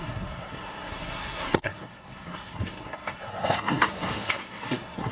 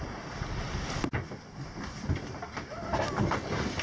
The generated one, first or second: first